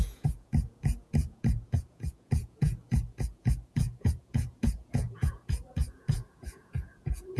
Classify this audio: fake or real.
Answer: fake